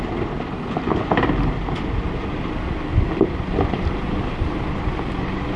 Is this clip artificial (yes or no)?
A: no